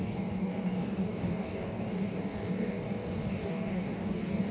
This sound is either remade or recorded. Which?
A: remade